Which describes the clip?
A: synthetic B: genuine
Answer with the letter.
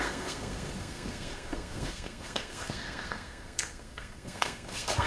A